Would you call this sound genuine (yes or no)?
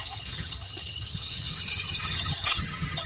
no